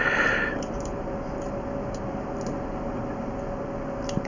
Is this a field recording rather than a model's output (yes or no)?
no